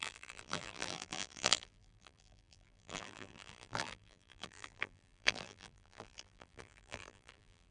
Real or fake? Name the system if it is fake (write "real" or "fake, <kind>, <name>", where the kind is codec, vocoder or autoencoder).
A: fake, vocoder, BigVGAN v2